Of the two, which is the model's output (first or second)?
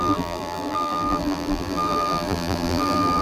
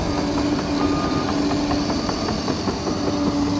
first